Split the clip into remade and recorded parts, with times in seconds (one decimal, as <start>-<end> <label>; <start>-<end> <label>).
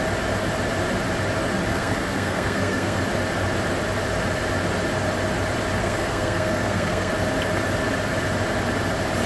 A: 0.0-1.7 recorded; 1.7-3.0 remade; 3.0-5.8 recorded; 5.8-7.1 remade; 7.1-9.3 recorded